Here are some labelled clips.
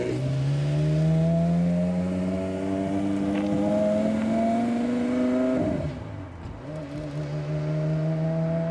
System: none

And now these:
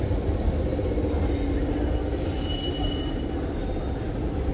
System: none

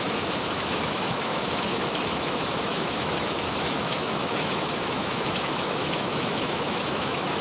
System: autoencoder, DAC-VAE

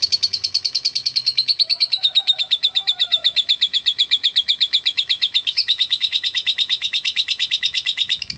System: autoencoder, DAC-VAE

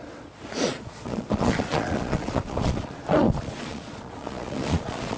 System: vocoder, Vocos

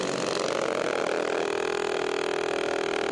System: none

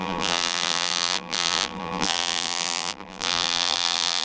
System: vocoder, BigVGAN v2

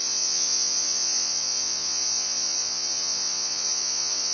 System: vocoder, Vocos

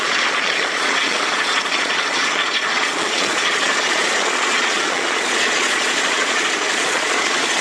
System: vocoder, Vocos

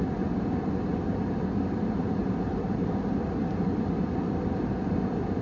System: none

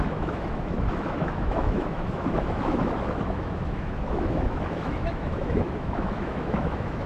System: autoencoder, DAC-VAE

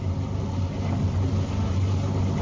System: none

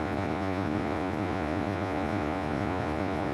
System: vocoder, Vocos